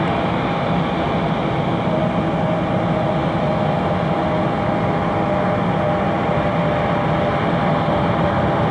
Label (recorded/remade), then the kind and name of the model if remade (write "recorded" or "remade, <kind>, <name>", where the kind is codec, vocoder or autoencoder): recorded